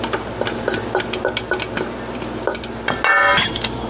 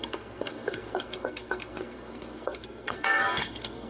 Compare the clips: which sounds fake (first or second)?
second